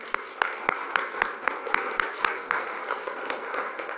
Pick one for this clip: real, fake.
fake